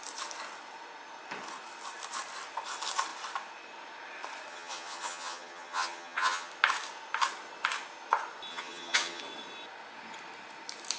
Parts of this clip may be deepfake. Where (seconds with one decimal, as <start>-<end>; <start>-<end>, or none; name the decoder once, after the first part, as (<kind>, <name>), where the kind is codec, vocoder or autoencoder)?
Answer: 4.5-6.5 (vocoder, HiFi-GAN); 8.5-9.2